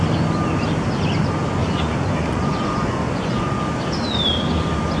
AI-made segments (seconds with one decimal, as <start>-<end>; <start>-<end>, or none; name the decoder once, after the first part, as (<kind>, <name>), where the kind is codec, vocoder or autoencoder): 1.6-3.6 (vocoder, Vocos)